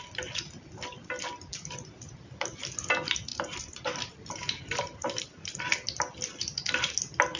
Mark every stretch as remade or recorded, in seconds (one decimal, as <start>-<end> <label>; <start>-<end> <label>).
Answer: 0.0-3.3 recorded; 3.3-5.6 remade; 5.6-7.4 recorded